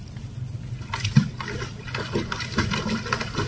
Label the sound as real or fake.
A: real